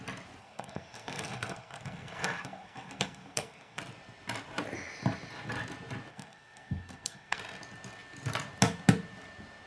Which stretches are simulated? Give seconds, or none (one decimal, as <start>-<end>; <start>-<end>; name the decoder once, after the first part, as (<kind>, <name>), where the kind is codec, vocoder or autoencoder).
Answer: 0.4-3.8 (codec, SNAC); 6.1-7.4